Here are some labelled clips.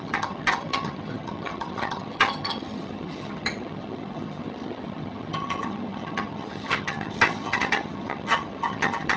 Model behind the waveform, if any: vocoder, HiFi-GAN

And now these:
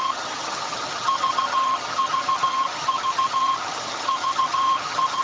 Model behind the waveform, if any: vocoder, HiFi-GAN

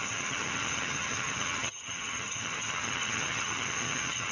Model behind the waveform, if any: vocoder, HiFi-GAN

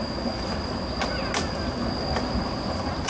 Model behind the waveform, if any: none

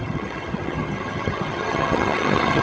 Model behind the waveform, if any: vocoder, HiFi-GAN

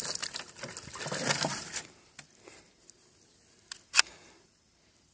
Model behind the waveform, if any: none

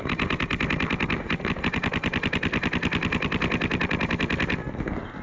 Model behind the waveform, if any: none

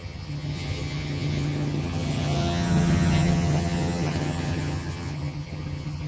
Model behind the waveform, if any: vocoder, HiFi-GAN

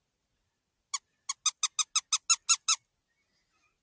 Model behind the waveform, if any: none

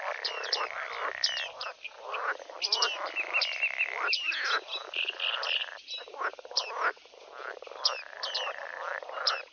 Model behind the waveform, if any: none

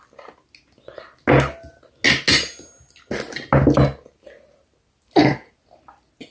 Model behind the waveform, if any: none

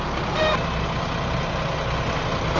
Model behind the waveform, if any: none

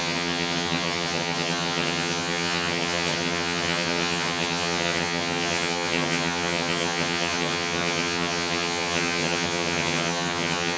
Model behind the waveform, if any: vocoder, HiFi-GAN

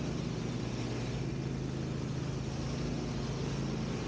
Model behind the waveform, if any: none